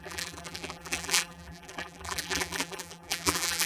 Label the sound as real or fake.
fake